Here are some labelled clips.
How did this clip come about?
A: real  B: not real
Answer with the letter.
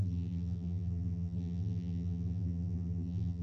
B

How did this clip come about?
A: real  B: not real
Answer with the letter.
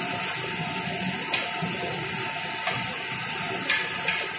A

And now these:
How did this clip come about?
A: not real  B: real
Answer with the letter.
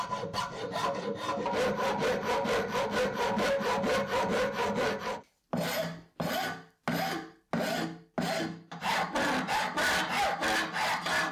B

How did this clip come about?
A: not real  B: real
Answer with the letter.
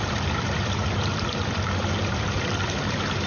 A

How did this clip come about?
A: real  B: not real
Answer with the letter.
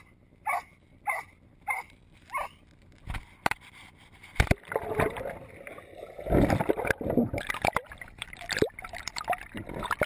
A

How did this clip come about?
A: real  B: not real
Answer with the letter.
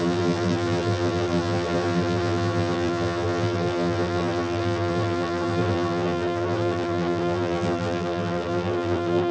B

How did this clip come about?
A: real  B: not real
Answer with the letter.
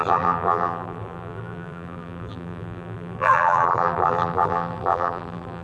B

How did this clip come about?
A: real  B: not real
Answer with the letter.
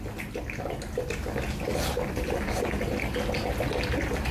A